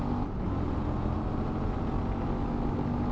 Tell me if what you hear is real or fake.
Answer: real